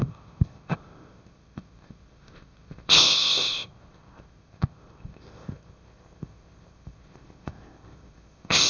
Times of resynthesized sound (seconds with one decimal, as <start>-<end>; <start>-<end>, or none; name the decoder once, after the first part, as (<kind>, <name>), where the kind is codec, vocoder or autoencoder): 0.0-8.7 (codec, ZipCodec)